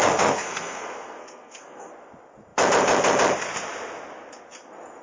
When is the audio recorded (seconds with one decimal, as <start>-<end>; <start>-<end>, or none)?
1.9-5.0